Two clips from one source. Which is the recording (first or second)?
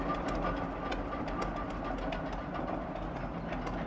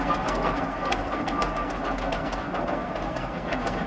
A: first